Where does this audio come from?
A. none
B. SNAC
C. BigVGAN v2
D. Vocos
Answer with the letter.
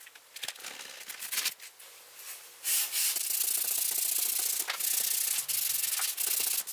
A